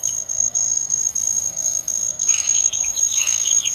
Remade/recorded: remade